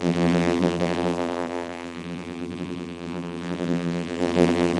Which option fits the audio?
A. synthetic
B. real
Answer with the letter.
A